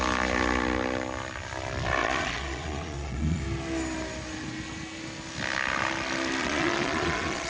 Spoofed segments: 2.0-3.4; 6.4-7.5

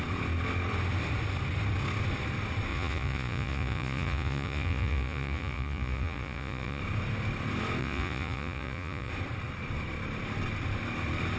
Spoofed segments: 2.7-6.8; 7.8-9.1

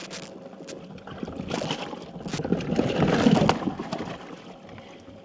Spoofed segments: none

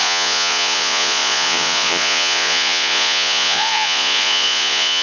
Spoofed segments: 0.0-5.0

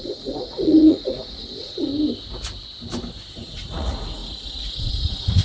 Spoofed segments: 0.0-1.9; 3.3-5.4

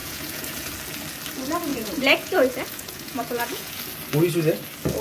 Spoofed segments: 0.0-0.7; 1.7-3.8